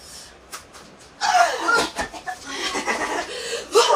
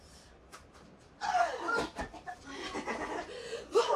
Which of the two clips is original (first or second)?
first